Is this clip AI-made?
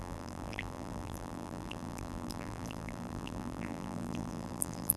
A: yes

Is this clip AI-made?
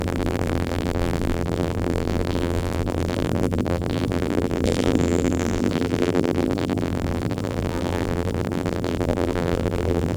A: yes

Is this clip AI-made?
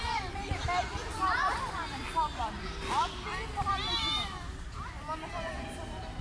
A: yes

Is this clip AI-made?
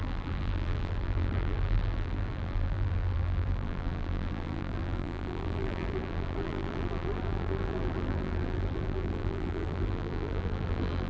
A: yes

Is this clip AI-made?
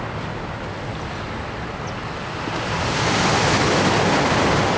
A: no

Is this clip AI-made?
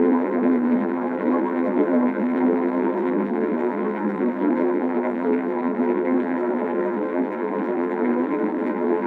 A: yes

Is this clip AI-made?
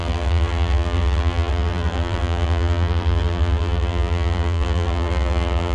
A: yes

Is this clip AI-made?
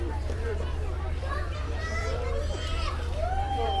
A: yes